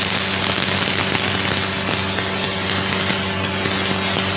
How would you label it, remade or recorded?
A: recorded